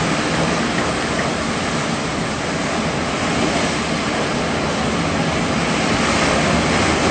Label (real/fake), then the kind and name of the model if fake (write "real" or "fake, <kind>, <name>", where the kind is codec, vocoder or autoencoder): real